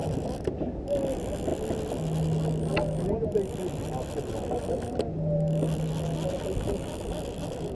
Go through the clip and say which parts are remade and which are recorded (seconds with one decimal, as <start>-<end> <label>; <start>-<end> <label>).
0.0-7.7 recorded